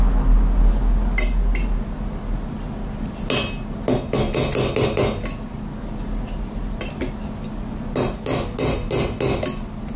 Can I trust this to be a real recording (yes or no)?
yes